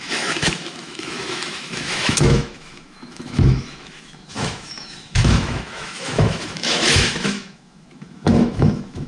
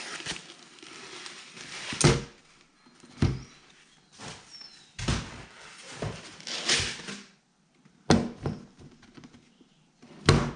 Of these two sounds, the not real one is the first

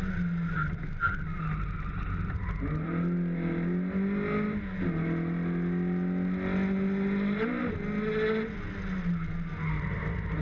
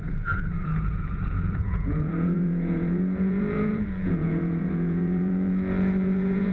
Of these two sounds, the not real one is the second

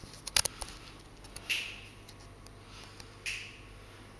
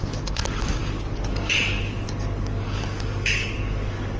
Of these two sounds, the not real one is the second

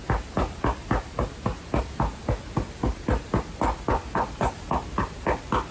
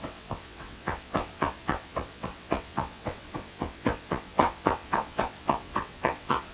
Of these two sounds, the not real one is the second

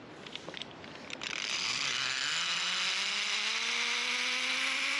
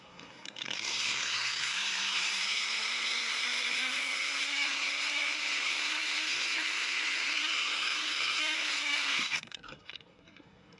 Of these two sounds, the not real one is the second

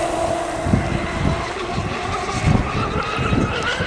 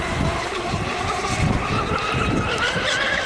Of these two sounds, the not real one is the second